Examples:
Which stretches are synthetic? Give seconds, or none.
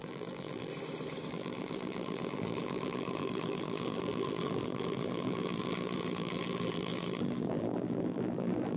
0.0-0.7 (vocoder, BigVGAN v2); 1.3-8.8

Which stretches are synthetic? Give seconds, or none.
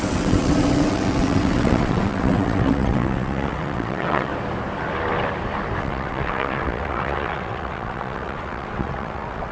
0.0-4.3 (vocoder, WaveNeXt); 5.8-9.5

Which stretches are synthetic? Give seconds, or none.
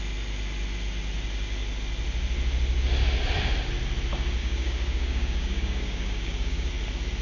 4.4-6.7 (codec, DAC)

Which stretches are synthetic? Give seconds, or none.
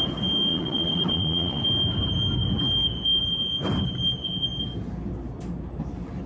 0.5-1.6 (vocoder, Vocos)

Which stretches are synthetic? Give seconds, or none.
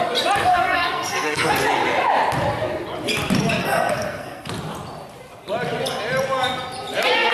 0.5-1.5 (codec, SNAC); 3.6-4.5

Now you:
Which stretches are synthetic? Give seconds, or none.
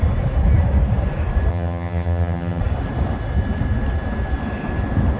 1.5-2.6 (vocoder, HiFi-GAN)